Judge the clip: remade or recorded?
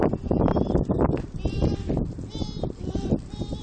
recorded